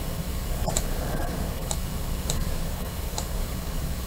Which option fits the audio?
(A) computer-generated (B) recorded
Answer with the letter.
A